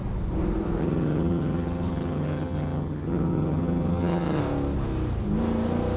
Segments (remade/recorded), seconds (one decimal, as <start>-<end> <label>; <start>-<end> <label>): 0.0-0.8 recorded; 0.8-4.4 remade; 4.4-6.0 recorded